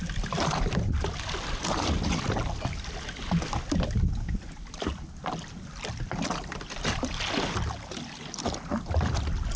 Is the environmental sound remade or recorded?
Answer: recorded